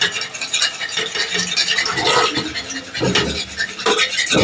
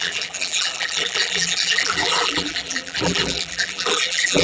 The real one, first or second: first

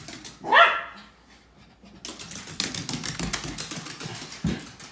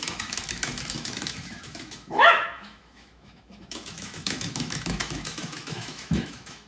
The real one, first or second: first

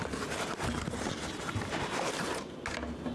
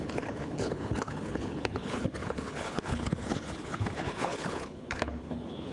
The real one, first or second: first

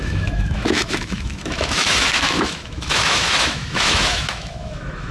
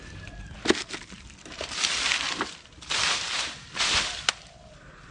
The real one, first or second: second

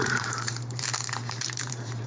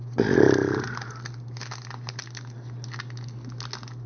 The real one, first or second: second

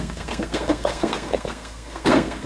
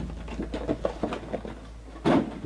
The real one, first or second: second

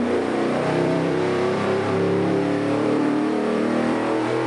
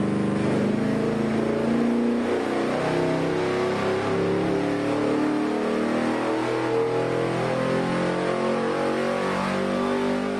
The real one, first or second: second